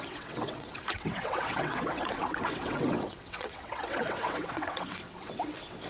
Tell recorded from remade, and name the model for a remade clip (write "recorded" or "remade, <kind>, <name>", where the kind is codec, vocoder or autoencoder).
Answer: remade, vocoder, WaveNeXt